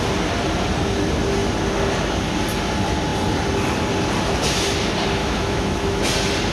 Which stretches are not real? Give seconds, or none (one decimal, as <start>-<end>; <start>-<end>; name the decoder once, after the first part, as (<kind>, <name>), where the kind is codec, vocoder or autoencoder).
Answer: 5.2-6.0 (autoencoder, DAC-VAE)